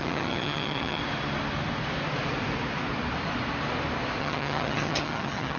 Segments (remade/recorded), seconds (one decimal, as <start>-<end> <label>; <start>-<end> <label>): 0.0-1.0 remade; 1.0-4.2 recorded; 4.2-5.6 remade

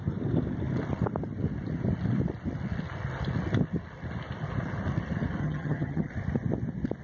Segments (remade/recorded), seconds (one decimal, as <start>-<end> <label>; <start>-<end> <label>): 0.0-5.4 recorded; 5.4-6.1 remade; 6.1-7.0 recorded